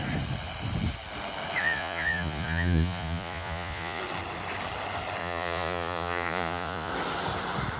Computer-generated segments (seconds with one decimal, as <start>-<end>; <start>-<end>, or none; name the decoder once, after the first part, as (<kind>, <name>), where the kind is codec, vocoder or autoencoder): 1.6-4.0 (vocoder, Vocos); 5.2-6.9